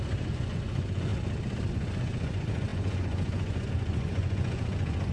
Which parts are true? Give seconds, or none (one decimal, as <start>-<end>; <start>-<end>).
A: 1.1-1.7